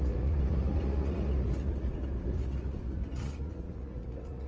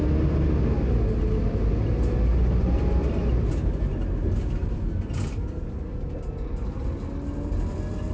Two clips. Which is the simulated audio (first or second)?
first